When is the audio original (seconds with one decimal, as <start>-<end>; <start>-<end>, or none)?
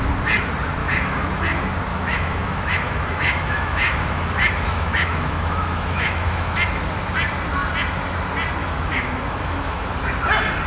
0.0-0.8; 1.4-1.9; 6.5-8.6; 9.9-10.7